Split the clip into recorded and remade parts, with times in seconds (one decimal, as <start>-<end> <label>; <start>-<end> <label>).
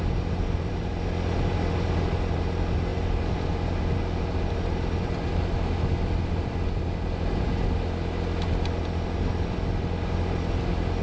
0.0-11.0 recorded